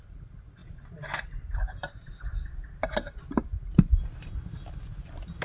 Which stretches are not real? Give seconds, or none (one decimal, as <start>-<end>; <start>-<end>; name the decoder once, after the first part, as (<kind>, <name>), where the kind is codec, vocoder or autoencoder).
none